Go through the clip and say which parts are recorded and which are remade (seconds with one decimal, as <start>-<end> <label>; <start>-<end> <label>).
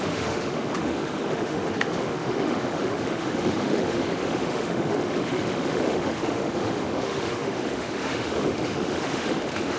0.0-9.8 remade